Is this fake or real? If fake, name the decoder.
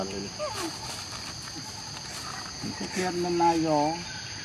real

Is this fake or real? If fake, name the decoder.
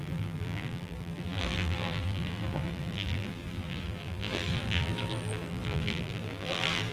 fake, vocoder, BigVGAN v2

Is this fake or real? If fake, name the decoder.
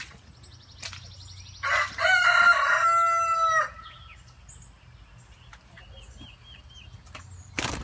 real